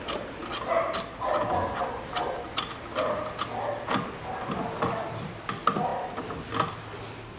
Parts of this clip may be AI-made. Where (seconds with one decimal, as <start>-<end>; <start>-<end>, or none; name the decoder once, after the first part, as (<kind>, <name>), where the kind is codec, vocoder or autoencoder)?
none